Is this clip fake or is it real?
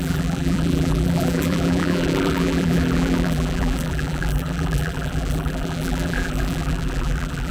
fake